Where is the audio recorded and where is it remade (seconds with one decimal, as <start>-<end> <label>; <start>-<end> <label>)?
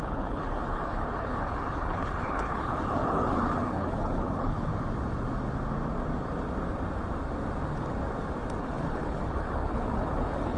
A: 0.0-4.7 remade; 4.7-8.6 recorded; 8.6-10.6 remade